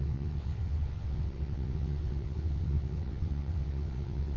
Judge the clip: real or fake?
fake